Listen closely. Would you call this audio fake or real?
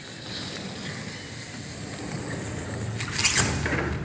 real